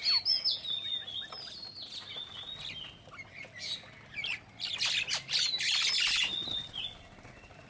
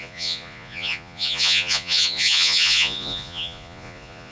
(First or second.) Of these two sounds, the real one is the first